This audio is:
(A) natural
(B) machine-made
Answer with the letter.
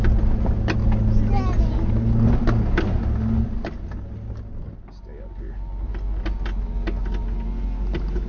A